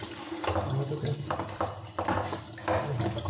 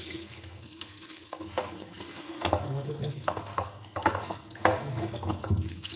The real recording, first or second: first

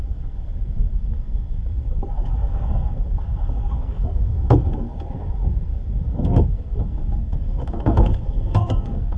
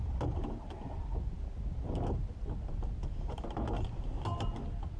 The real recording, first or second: second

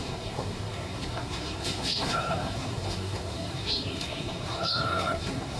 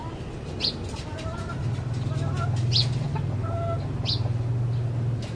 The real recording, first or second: second